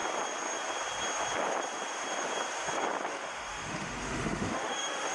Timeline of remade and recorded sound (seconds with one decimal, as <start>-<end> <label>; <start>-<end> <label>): 0.0-3.1 recorded; 3.1-5.1 remade